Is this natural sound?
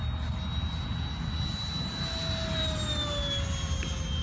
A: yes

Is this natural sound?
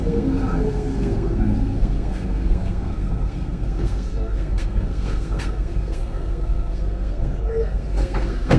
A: no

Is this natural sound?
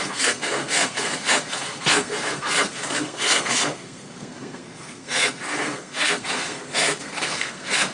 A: no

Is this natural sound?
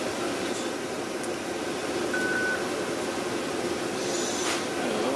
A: yes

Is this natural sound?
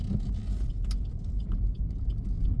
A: yes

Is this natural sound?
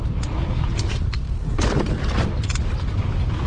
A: yes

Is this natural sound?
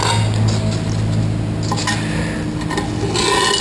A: yes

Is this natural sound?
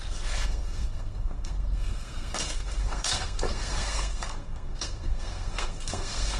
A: no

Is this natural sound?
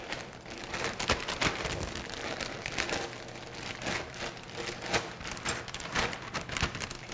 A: yes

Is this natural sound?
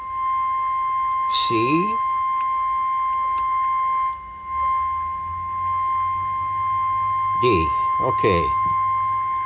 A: yes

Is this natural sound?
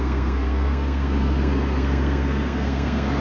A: no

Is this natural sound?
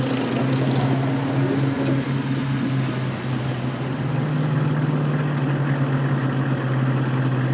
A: yes